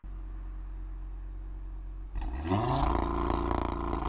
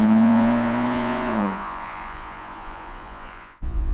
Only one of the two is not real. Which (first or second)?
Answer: second